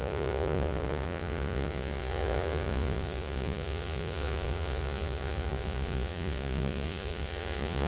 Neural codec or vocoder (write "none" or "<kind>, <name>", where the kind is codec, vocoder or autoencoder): vocoder, Vocos